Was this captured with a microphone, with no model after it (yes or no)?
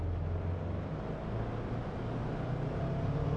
yes